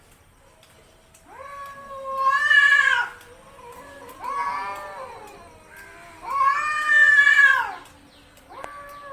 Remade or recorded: recorded